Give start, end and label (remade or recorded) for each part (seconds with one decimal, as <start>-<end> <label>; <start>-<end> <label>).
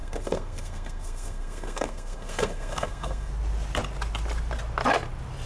0.0-3.3 remade; 3.3-5.5 recorded